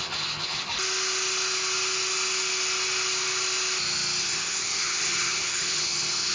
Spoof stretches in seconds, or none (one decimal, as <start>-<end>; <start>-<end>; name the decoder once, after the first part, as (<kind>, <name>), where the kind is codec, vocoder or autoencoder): 0.0-0.7 (vocoder, HiFi-GAN); 4.2-6.3